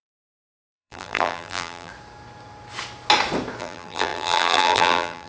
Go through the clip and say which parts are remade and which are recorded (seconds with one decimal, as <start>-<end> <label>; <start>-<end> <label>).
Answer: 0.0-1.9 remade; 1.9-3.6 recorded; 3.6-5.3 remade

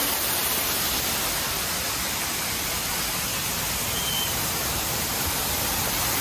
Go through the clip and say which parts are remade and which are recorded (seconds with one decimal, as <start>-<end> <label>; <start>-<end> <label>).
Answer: 0.0-0.4 remade; 0.4-2.9 recorded; 2.9-3.3 remade; 3.3-4.4 recorded; 4.4-6.2 remade

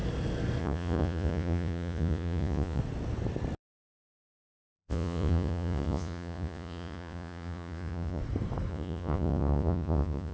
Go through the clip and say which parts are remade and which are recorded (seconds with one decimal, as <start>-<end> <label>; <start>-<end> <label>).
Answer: 0.0-0.6 recorded; 0.6-2.8 remade; 2.8-3.9 recorded; 3.9-8.2 remade; 8.2-8.7 recorded; 8.7-10.3 remade

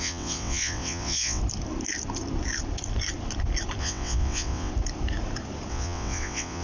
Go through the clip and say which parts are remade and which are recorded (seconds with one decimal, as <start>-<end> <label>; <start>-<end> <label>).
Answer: 0.0-1.4 remade; 1.4-3.8 recorded; 3.8-4.7 remade; 4.7-5.7 recorded; 5.7-6.6 remade

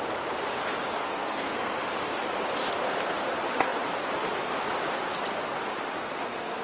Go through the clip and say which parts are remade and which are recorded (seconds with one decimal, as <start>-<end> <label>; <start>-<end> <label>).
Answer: 0.0-1.0 recorded; 1.0-1.8 remade; 1.8-6.0 recorded; 6.0-6.6 remade

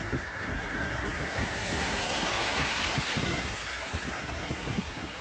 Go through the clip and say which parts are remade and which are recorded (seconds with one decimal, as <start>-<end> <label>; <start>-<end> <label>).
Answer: 0.0-5.2 remade